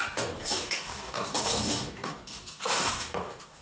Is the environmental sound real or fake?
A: fake